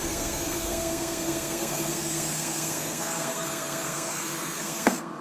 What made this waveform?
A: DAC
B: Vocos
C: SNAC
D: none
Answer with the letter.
C